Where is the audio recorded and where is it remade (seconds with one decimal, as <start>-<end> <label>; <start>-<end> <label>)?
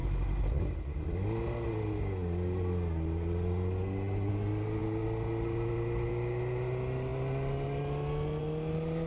0.0-9.1 recorded